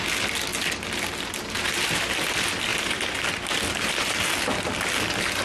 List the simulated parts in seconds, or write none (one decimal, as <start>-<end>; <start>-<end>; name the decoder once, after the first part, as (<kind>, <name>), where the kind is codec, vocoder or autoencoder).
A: 2.7-3.3 (vocoder, BigVGAN v2)